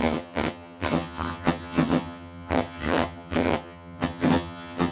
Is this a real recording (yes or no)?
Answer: no